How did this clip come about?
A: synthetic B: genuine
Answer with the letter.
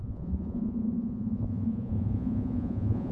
A